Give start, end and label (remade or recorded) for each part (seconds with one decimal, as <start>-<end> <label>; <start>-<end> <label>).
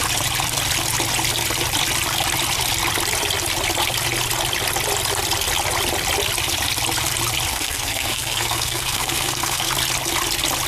0.0-7.5 recorded; 7.5-9.7 remade; 9.7-10.7 recorded